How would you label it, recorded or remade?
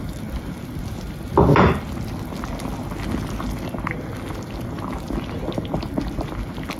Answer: recorded